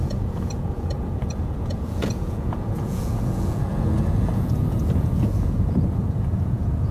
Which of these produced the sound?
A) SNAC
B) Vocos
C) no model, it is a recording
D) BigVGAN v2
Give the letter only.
B